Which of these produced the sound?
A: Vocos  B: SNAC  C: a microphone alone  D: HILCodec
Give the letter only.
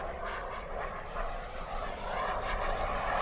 C